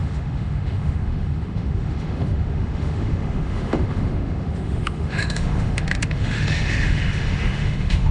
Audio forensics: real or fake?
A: fake